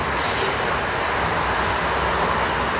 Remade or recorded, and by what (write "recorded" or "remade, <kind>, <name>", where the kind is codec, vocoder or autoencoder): recorded